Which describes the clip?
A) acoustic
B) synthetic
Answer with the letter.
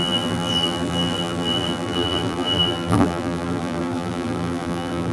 B